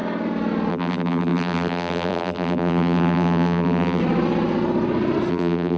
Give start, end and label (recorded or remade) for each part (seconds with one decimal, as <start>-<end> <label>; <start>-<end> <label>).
0.0-0.7 recorded; 0.7-4.0 remade; 4.0-5.3 recorded; 5.3-5.8 remade